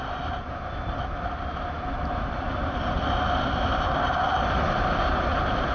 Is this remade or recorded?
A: recorded